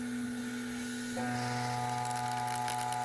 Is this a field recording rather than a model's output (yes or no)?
yes